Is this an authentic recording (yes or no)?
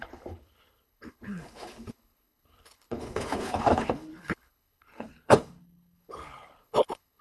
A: no